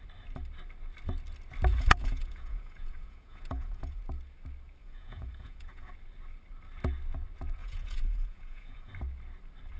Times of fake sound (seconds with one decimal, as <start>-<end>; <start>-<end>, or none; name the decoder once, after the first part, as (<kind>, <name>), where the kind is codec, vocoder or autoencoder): 1.7-4.0 (vocoder, Vocos); 4.8-5.9; 7.6-8.9